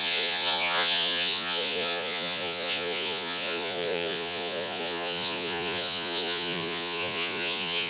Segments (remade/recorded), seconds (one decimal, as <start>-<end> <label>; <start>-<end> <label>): 0.0-7.9 remade